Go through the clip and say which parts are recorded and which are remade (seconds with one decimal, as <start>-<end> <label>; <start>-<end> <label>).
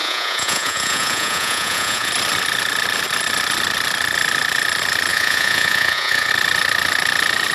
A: 0.0-2.1 remade; 2.1-5.1 recorded; 5.1-6.3 remade; 6.3-7.5 recorded